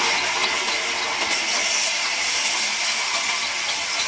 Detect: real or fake real